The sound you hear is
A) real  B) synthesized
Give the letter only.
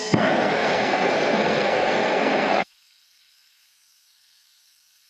B